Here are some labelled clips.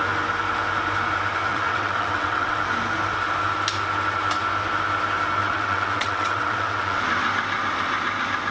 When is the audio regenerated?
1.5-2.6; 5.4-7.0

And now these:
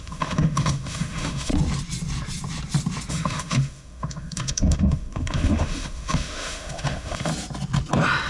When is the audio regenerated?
0.0-1.5; 3.1-7.3

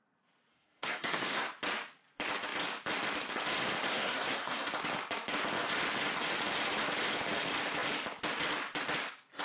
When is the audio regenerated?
0.5-1.5; 3.9-4.7

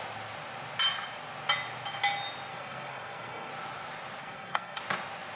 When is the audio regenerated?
2.5-3.5; 4.2-4.8